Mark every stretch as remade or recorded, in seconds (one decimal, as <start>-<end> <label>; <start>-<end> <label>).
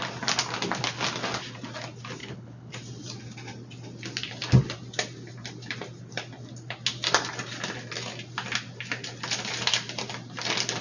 0.0-2.2 recorded; 2.2-2.7 remade; 2.7-10.8 recorded